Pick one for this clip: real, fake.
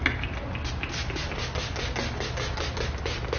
real